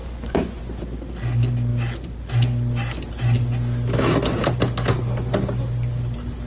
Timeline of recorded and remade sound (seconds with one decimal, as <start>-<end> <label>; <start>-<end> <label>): 0.0-0.6 remade; 0.6-6.5 recorded